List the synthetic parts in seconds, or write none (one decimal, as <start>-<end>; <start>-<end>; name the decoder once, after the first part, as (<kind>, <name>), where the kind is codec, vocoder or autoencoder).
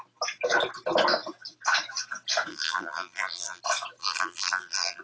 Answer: 2.5-3.6 (vocoder, BigVGAN v2); 4.0-5.0